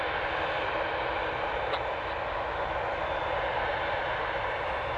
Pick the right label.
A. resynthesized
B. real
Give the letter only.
B